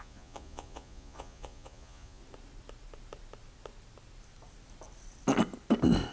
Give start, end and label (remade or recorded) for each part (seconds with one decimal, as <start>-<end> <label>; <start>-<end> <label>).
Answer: 0.0-2.2 remade; 2.2-6.1 recorded